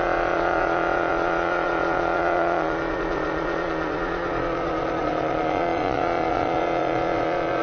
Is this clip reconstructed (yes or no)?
yes